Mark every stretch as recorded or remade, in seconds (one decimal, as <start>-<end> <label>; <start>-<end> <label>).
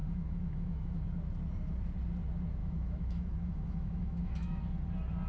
0.0-1.0 remade; 1.0-2.6 recorded; 2.6-4.6 remade; 4.6-5.3 recorded